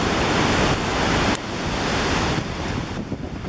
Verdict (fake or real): fake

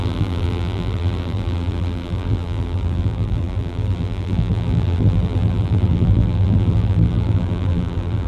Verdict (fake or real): fake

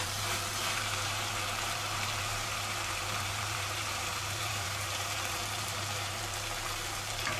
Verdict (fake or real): fake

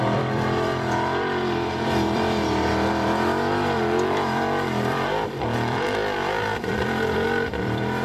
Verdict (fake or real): fake